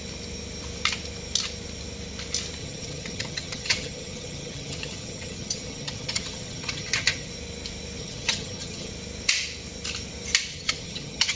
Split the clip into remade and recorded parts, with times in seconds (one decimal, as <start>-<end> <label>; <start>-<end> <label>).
0.0-2.6 recorded; 2.6-7.3 remade; 7.3-8.0 recorded; 8.0-8.9 remade; 8.9-10.5 recorded; 10.5-11.4 remade